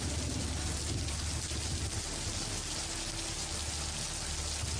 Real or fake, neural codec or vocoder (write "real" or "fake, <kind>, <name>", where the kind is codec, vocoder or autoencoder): real